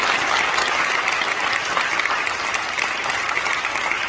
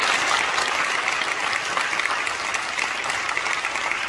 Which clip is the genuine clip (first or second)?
first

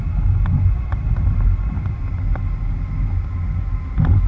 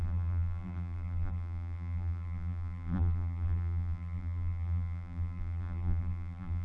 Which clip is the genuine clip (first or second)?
first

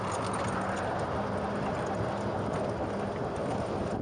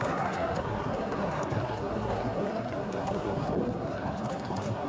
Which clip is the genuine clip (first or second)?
first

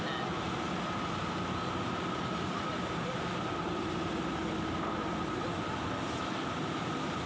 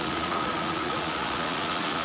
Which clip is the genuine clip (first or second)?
first